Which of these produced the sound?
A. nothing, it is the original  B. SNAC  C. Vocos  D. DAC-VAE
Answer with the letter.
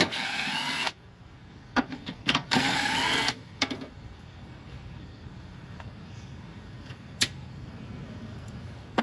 B